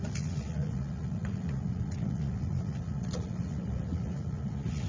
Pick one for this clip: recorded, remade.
remade